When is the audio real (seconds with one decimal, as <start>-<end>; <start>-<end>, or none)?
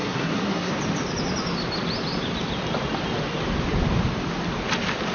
0.7-5.1